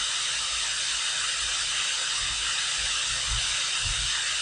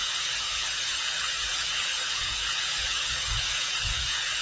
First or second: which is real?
first